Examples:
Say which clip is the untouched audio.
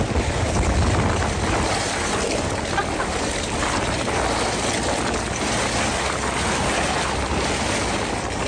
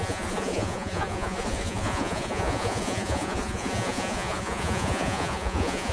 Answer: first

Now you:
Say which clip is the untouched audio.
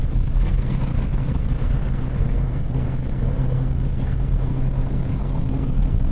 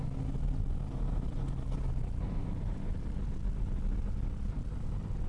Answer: second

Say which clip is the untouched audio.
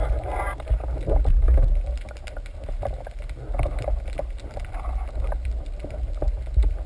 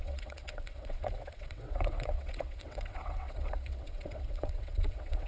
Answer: first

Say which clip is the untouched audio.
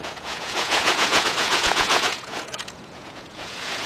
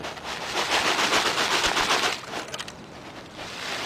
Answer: second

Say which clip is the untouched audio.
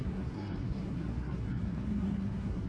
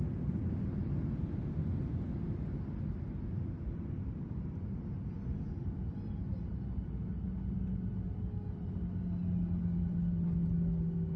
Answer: second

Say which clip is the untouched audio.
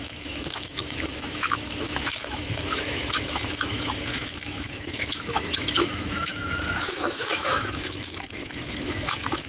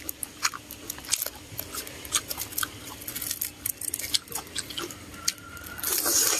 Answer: second